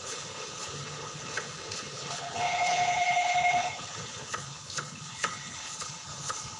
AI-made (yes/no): yes